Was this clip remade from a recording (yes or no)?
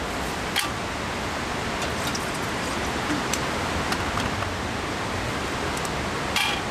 no